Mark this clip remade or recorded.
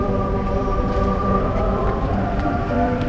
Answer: remade